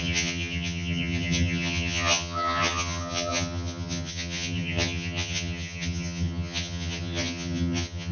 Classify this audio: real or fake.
fake